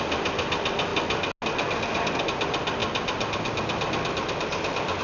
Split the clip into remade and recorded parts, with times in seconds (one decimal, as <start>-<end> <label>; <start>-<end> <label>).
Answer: 0.0-5.0 recorded